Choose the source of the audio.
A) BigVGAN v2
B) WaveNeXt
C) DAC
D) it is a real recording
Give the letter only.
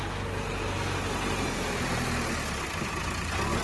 D